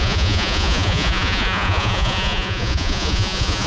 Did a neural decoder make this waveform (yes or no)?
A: yes